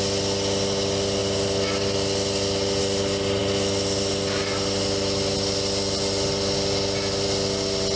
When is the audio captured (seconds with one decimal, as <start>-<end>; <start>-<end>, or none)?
0.0-8.0